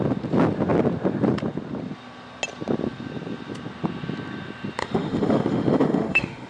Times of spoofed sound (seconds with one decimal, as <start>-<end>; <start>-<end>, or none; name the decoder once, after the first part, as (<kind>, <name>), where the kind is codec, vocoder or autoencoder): 4.8-6.5 (autoencoder, DAC-VAE)